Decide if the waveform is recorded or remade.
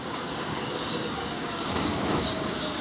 remade